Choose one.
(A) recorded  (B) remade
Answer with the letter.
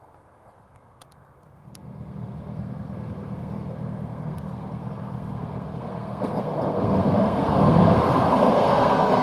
B